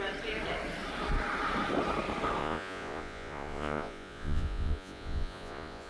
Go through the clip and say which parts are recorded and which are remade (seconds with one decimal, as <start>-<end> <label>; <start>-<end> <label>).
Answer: 0.0-2.4 recorded; 2.4-5.9 remade